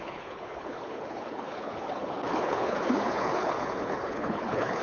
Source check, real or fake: fake